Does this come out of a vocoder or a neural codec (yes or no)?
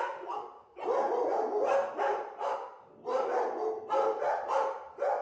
no